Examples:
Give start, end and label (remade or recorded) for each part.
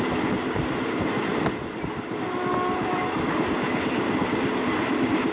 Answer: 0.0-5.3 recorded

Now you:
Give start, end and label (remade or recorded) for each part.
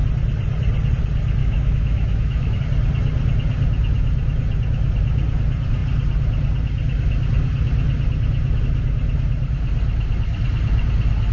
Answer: 0.0-1.4 recorded; 1.4-2.6 remade; 2.6-11.3 recorded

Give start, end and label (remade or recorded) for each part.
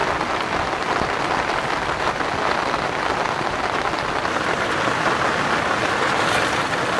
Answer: 0.0-7.0 recorded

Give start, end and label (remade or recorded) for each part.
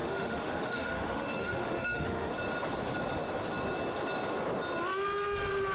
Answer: 0.0-2.3 remade; 2.3-5.7 recorded